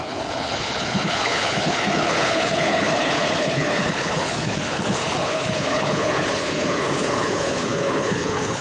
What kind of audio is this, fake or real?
fake